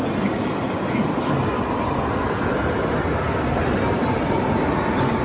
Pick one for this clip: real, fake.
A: real